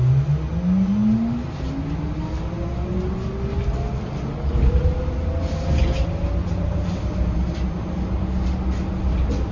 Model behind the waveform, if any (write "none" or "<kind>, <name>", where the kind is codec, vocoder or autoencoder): none